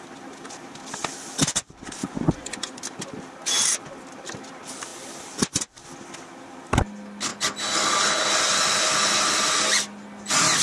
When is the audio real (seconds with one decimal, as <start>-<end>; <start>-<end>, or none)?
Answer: 0.0-2.0; 2.8-10.6